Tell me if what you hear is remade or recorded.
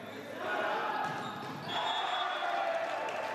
recorded